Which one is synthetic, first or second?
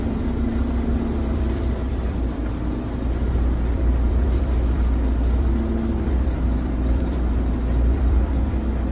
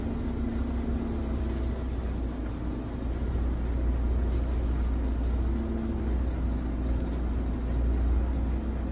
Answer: first